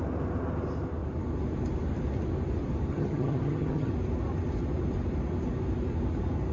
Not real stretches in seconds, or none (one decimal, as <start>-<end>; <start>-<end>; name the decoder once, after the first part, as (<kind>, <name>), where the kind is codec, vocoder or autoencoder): 2.9-3.9 (vocoder, HiFi-GAN)